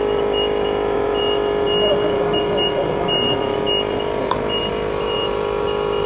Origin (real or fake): real